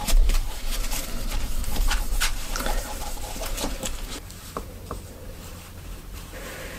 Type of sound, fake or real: fake